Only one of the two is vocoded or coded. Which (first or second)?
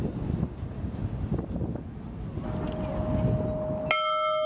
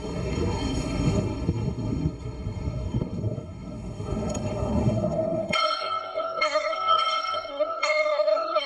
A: second